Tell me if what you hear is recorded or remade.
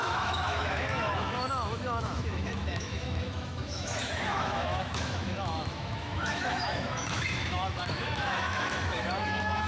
remade